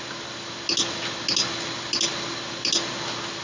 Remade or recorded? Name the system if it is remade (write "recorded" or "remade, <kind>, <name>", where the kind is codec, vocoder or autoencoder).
recorded